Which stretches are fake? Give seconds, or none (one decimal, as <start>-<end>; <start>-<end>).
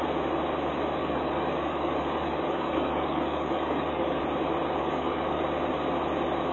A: 1.0-4.2; 4.8-5.4